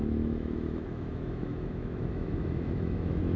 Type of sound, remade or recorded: remade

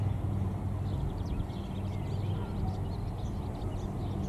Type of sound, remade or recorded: recorded